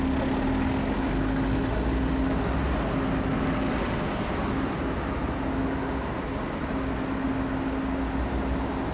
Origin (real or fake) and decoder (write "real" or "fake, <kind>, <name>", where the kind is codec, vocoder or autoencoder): real